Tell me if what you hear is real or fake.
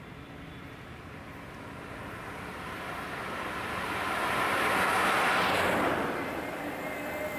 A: real